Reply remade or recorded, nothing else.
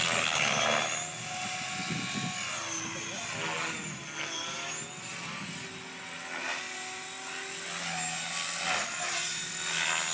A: recorded